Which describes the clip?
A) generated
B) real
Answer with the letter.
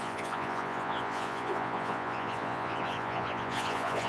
A